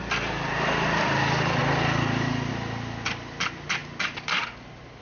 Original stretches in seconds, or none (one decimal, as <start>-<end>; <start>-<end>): 0.0-5.0